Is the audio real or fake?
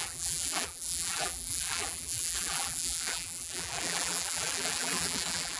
fake